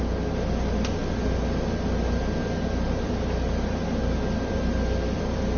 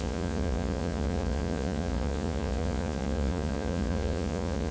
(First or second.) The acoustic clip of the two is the first